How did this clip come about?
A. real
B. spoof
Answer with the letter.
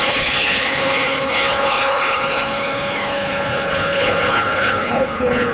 B